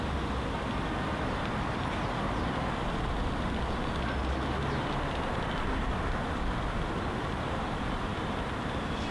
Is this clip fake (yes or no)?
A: no